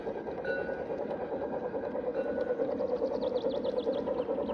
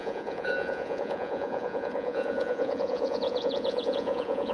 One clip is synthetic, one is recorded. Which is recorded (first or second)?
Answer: first